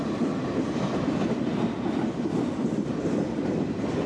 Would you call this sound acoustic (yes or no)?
yes